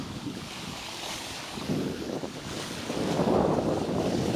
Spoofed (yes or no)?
yes